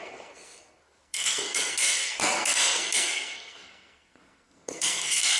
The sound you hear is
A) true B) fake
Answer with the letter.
B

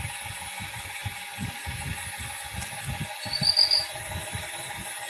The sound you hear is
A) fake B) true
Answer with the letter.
B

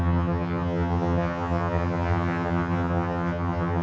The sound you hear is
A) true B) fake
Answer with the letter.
B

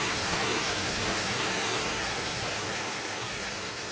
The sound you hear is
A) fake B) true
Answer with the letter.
A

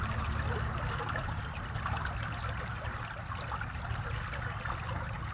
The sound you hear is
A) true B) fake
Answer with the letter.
A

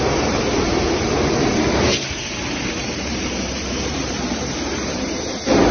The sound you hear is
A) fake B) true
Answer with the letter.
A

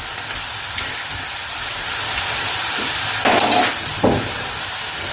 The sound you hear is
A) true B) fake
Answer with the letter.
A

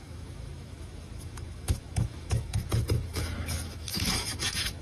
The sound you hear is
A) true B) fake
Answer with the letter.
B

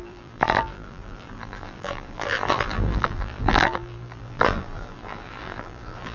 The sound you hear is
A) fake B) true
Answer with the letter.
A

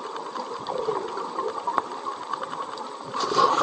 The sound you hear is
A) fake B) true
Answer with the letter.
B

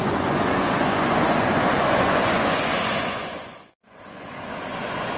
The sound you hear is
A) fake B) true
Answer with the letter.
A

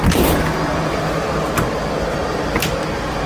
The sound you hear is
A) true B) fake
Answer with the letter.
A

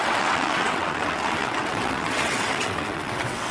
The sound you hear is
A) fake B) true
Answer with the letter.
A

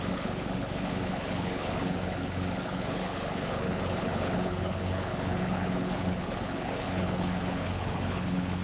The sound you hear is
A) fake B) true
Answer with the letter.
A